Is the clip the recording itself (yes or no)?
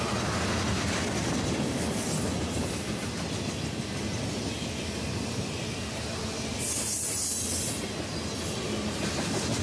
yes